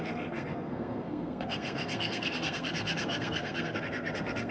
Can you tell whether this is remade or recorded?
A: remade